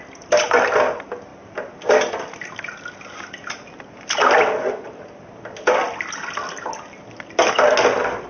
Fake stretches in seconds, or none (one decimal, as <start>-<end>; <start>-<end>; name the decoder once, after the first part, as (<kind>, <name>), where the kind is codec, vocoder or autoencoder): none